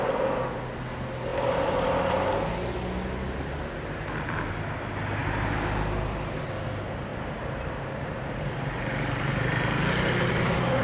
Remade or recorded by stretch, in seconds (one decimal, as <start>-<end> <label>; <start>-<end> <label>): 0.0-7.1 recorded; 7.1-9.8 remade; 9.8-10.8 recorded